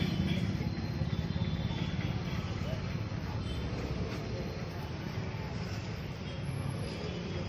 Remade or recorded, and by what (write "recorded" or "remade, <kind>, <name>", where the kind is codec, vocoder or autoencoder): recorded